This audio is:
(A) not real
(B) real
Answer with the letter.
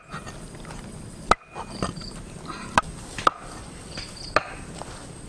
B